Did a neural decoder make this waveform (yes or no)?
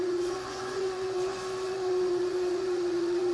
yes